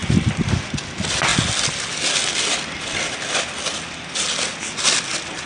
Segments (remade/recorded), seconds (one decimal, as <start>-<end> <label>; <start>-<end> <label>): 0.0-0.6 remade; 0.6-5.5 recorded